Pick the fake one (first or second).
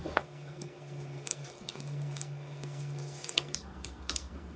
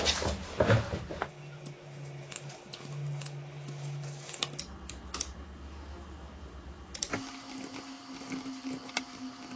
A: first